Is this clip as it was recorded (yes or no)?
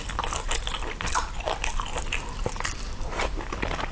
yes